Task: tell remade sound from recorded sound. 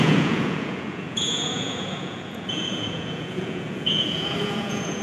remade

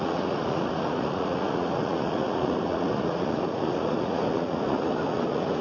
remade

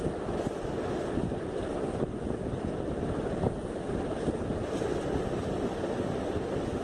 recorded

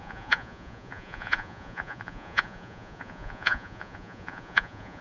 remade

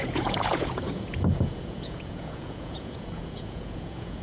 remade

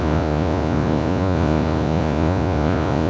remade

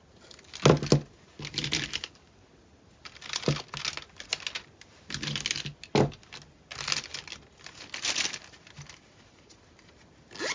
recorded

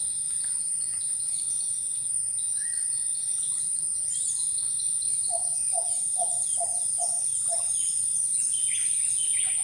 remade